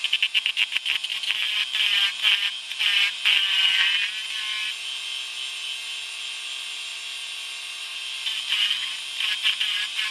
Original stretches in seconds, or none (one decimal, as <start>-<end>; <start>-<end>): 0.0-10.1